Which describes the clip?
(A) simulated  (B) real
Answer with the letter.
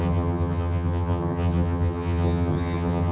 A